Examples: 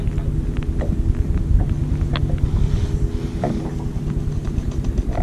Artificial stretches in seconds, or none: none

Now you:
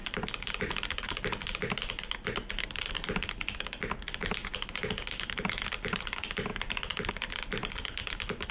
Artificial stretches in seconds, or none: none

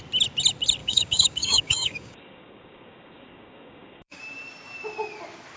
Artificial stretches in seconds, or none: 0.8-4.2 (codec, DAC)

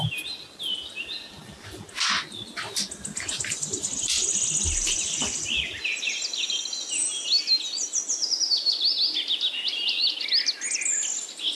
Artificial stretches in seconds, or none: none

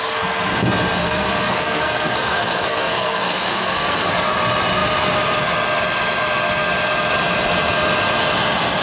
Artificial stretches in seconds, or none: 1.0-4.1 (codec, SNAC)